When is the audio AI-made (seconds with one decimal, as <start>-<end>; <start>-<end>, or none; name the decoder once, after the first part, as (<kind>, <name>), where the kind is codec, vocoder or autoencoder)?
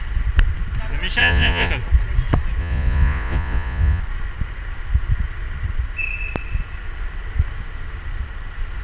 1.2-1.7 (vocoder, Vocos); 2.6-4.0